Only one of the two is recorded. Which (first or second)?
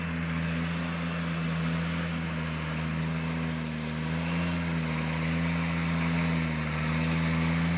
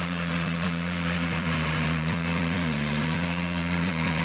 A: first